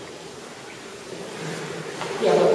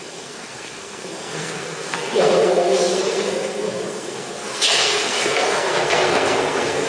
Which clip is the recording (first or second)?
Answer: first